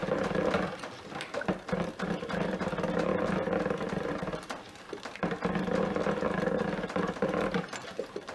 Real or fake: real